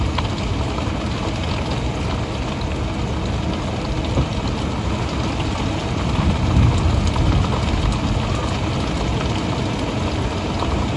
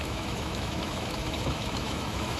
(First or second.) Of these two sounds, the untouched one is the first